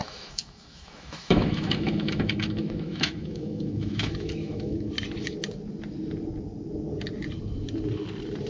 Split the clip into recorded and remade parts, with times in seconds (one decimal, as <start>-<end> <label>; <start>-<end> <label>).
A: 0.0-4.9 remade; 4.9-8.5 recorded